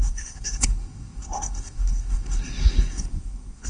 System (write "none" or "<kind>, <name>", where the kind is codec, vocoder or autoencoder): codec, SNAC